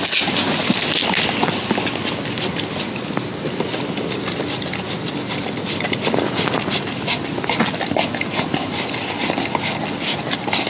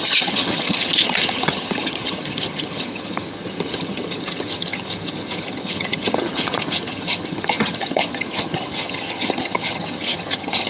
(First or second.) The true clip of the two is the first